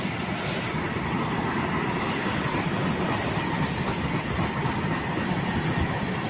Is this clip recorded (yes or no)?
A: yes